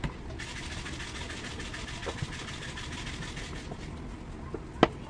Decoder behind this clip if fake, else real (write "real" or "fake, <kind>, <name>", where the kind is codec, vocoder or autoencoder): real